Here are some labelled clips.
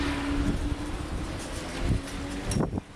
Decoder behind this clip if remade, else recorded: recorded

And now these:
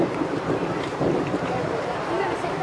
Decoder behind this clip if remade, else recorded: remade, vocoder, BigVGAN v2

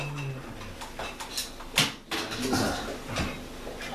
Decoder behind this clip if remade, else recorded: recorded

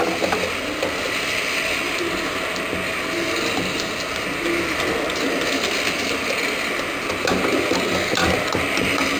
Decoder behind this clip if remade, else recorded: recorded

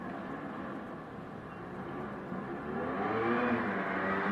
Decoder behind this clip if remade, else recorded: recorded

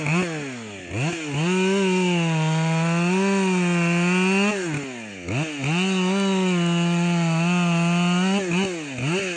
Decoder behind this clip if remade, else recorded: recorded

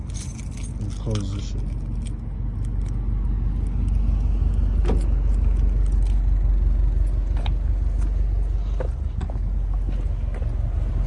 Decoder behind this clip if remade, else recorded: recorded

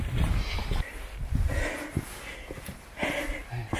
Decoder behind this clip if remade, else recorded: recorded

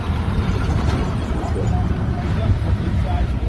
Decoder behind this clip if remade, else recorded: remade, vocoder, BigVGAN v2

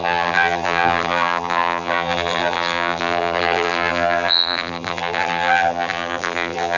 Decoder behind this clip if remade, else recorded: remade, vocoder, BigVGAN v2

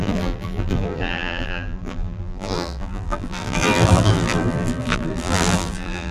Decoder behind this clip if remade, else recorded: remade, vocoder, BigVGAN v2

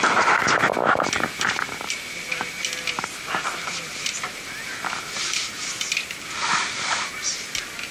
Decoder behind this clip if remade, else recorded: recorded